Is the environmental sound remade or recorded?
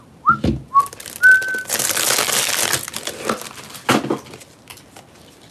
recorded